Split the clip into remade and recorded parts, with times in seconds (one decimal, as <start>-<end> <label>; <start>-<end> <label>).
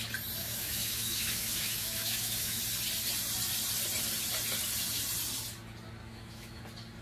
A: 0.0-0.4 recorded; 0.4-2.6 remade; 2.6-6.0 recorded; 6.0-6.6 remade; 6.6-7.0 recorded